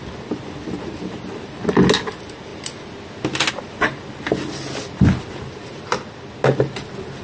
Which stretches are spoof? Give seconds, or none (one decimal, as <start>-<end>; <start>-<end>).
none